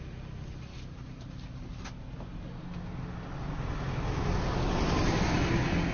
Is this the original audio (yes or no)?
yes